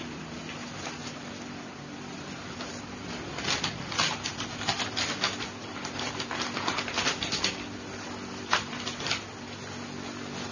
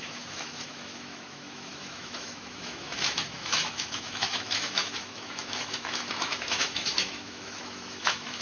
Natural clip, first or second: first